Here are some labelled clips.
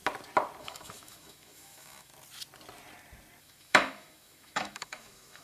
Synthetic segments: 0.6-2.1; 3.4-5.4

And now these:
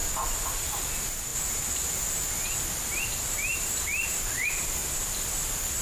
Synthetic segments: none

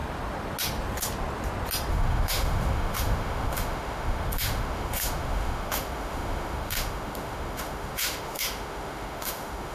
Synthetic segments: 1.9-9.7

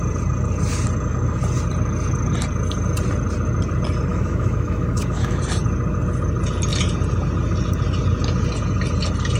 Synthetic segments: 4.1-5.4

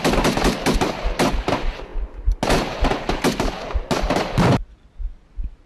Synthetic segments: none